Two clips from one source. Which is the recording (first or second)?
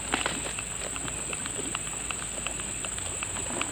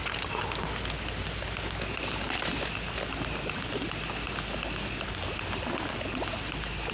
second